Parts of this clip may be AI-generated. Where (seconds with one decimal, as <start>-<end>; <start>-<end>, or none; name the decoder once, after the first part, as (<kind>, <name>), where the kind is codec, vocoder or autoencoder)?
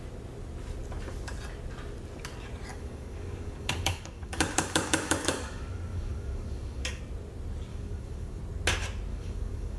2.7-7.0 (codec, DAC); 7.7-8.4; 9.1-9.8